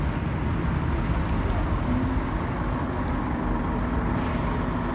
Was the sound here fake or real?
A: real